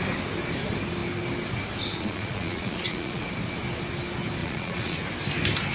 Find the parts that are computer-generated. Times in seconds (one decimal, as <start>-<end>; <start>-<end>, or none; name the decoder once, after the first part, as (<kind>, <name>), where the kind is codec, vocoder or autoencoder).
1.9-3.2 (vocoder, Vocos); 4.4-5.0